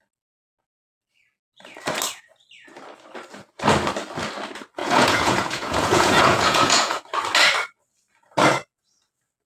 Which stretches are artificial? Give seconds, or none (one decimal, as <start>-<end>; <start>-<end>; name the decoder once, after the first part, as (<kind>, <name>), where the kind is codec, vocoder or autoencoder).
4.8-7.0 (vocoder, Vocos)